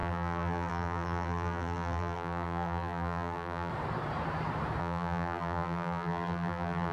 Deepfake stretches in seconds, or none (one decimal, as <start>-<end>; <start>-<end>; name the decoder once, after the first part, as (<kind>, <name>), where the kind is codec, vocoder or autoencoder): 0.0-3.7 (vocoder, BigVGAN v2); 4.8-6.9

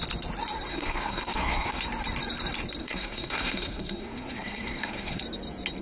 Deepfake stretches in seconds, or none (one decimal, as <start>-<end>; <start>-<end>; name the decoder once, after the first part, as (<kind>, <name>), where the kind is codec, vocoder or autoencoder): 0.7-1.8 (codec, SNAC); 2.8-5.2

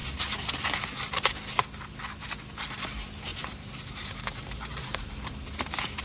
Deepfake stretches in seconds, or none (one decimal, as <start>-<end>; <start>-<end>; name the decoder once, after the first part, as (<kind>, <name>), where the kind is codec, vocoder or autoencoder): 3.3-5.3 (vocoder, BigVGAN v2)

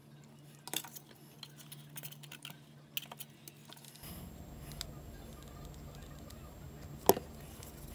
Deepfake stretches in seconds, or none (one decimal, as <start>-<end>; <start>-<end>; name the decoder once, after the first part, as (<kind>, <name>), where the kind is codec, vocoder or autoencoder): none

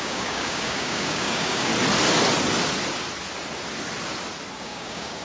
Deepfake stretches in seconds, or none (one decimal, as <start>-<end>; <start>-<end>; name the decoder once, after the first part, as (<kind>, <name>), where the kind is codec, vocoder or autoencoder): 0.0-1.7 (codec, DAC); 4.6-5.2

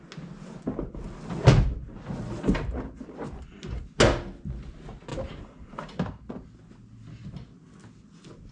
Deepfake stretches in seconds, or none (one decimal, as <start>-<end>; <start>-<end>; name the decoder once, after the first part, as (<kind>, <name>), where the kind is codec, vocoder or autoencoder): none